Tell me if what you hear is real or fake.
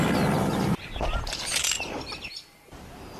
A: real